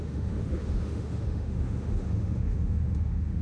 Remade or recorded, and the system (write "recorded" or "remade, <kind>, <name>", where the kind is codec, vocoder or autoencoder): remade, autoencoder, DAC-VAE